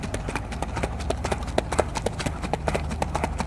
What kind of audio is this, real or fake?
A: real